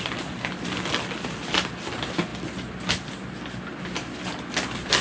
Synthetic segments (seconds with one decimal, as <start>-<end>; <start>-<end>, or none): none